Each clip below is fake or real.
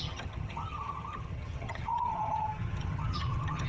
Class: fake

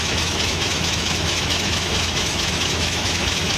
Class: fake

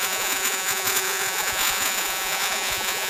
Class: fake